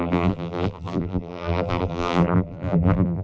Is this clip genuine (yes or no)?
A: no